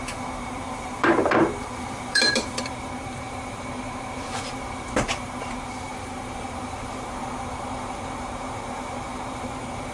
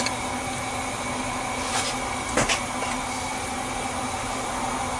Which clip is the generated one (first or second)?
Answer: first